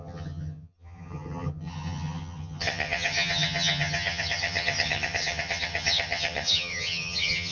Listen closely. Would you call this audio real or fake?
fake